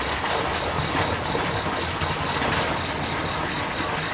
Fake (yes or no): no